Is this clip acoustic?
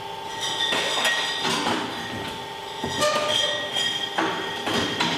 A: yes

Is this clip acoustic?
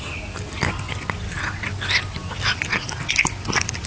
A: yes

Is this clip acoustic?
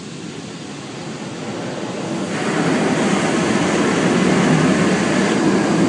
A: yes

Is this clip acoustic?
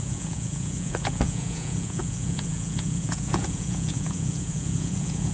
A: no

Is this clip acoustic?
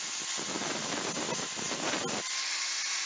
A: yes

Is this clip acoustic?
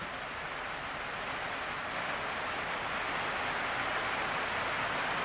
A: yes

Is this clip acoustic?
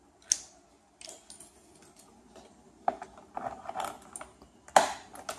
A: yes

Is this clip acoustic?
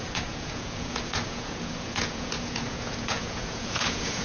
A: no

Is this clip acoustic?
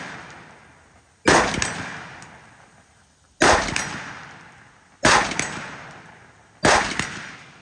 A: yes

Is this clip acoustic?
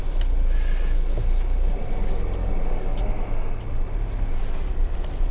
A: yes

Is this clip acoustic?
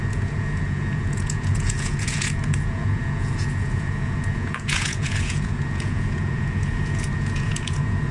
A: no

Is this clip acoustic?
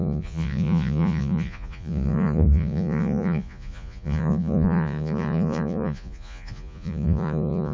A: no